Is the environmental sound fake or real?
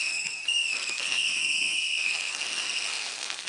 fake